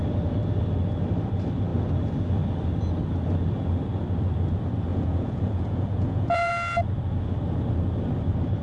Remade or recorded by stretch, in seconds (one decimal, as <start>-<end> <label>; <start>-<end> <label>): 0.0-4.9 recorded; 4.9-6.5 remade; 6.5-8.6 recorded

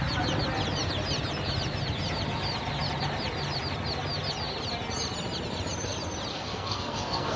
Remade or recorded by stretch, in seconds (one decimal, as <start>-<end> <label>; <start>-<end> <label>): 0.0-6.3 recorded; 6.3-7.4 remade

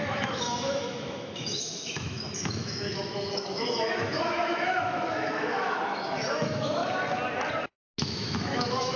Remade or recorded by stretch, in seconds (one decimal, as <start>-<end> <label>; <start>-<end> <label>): 0.0-6.8 remade; 6.8-8.0 recorded; 8.0-9.0 remade

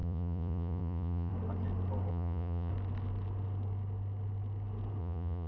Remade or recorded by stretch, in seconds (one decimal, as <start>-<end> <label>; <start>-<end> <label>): 0.0-1.3 remade; 1.3-2.1 recorded; 2.1-2.7 remade; 2.7-5.0 recorded; 5.0-5.5 remade

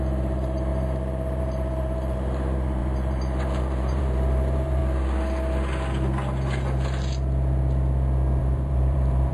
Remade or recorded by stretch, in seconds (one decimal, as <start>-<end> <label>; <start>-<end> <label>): 0.0-0.7 remade; 0.7-1.4 recorded; 1.4-4.8 remade; 4.8-8.4 recorded; 8.4-9.3 remade

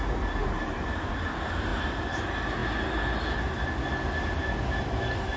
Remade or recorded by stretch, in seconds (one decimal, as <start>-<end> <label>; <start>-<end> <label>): 0.0-0.4 recorded; 0.4-1.1 remade; 1.1-1.7 recorded; 1.7-2.2 remade; 2.2-5.4 recorded

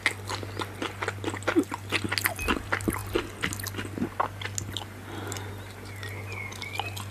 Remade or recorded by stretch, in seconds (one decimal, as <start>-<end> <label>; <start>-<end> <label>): 0.0-7.1 recorded